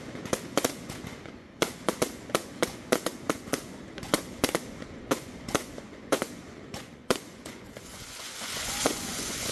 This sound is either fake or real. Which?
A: fake